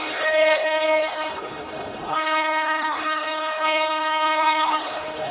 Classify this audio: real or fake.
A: fake